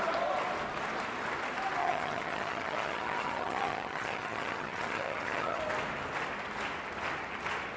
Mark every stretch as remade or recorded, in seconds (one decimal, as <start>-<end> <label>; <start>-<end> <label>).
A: 0.0-1.8 recorded; 1.8-5.6 remade; 5.6-7.8 recorded